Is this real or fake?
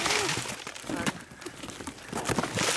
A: real